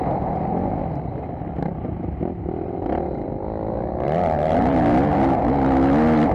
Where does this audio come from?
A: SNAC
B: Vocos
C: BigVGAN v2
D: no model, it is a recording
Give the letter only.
D